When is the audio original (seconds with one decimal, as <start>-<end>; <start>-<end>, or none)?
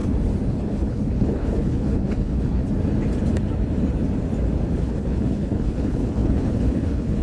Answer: 0.0-0.6; 2.6-4.7